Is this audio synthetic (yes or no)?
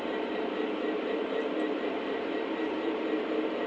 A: yes